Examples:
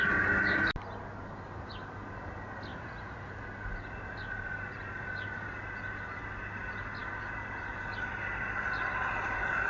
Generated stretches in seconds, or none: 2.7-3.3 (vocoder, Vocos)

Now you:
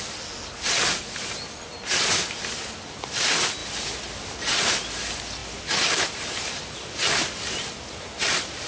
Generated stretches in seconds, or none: none

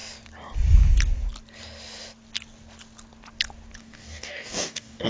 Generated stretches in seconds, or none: 3.8-5.1 (codec, DAC)

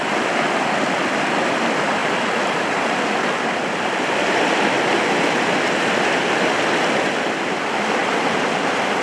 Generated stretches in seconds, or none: none

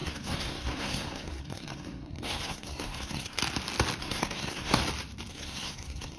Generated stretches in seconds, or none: 0.0-3.4 (codec, SNAC); 4.0-4.8; 5.3-6.2

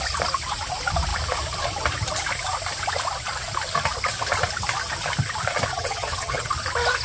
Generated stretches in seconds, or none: 5.7-6.5 (vocoder, HiFi-GAN)

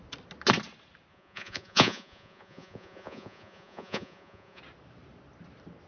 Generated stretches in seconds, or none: 1.1-4.6 (vocoder, Vocos)

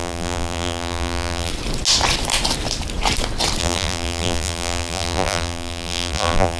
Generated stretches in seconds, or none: 0.0-1.5 (vocoder, BigVGAN v2); 3.6-6.6